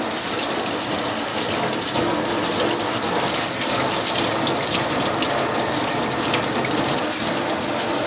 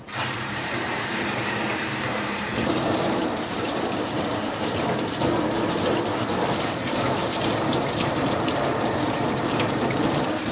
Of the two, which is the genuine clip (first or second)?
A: first